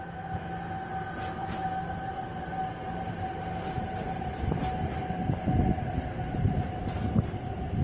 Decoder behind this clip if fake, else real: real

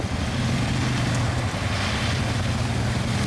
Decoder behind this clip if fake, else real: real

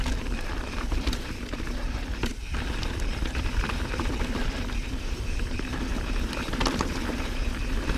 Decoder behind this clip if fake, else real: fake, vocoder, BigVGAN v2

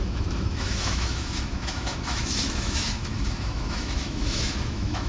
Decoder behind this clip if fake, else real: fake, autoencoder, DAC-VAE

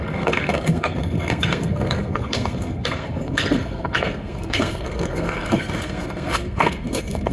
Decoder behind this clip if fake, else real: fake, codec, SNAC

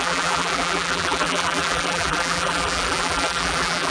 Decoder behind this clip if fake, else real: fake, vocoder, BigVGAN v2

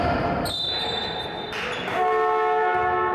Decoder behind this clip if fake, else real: real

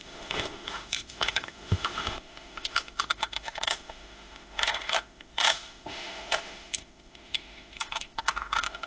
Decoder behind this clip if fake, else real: fake, autoencoder, DAC-VAE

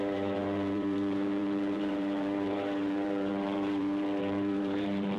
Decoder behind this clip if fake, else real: fake, vocoder, BigVGAN v2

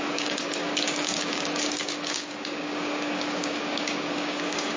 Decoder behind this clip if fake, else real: fake, codec, DAC